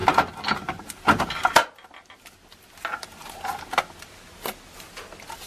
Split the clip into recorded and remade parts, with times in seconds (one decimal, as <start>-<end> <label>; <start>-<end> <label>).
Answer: 0.0-5.5 recorded